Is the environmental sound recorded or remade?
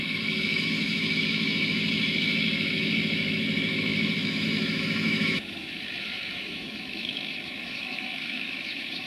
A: remade